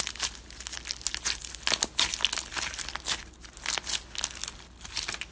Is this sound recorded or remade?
recorded